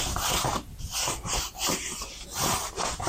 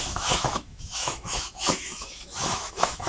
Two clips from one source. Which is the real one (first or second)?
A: first